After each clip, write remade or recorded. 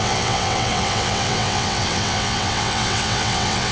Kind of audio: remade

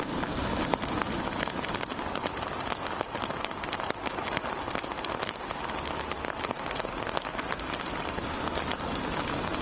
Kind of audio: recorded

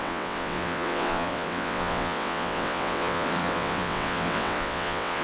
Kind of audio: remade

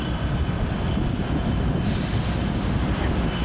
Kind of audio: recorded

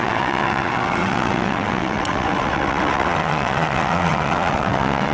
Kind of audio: remade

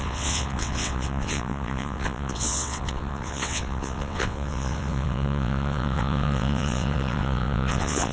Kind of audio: remade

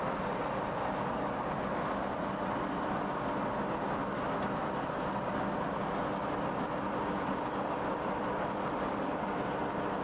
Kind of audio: recorded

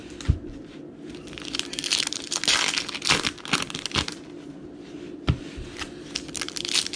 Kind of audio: recorded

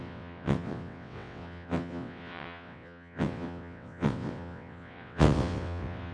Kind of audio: remade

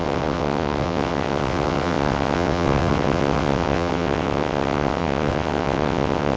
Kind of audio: remade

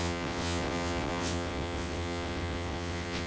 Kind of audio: remade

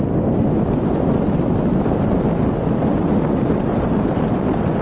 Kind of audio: recorded